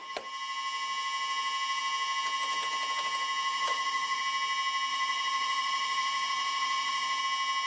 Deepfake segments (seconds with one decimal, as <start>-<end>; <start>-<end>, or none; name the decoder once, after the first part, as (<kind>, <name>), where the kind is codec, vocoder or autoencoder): 3.5-4.2 (vocoder, Vocos); 4.9-7.2